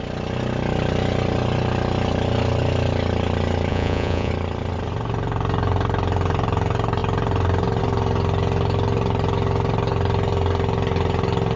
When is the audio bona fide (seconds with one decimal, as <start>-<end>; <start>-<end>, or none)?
0.0-3.7; 4.3-11.6